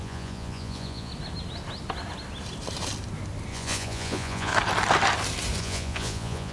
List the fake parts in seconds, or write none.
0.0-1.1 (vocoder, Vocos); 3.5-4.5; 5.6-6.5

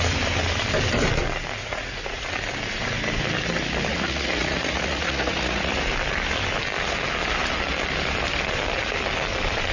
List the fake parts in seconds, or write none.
1.6-2.3 (vocoder, Vocos); 3.9-5.7

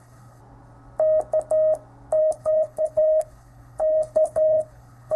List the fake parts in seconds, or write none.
0.0-0.4 (codec, HILCodec); 2.2-5.2

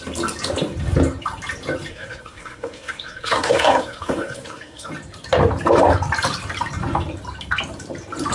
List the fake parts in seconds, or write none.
1.9-4.9 (codec, SNAC)

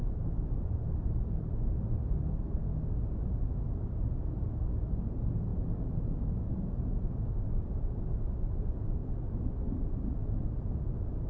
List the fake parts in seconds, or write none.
none